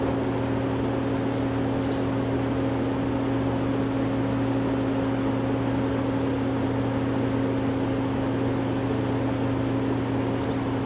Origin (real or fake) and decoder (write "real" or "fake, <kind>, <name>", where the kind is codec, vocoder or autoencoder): real